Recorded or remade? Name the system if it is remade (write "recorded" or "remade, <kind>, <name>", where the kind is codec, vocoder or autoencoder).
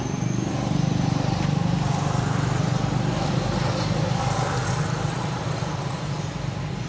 recorded